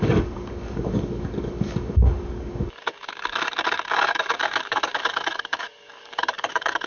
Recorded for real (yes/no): no